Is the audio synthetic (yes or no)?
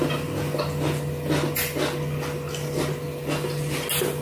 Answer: no